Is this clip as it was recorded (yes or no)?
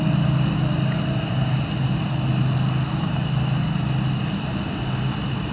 yes